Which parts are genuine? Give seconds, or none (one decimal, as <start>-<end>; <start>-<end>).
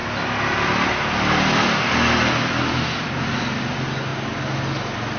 0.0-5.2